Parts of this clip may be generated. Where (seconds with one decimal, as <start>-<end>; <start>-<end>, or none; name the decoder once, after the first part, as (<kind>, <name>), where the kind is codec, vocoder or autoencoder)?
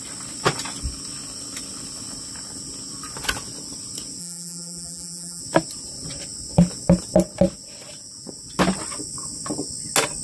4.2-5.4 (vocoder, BigVGAN v2)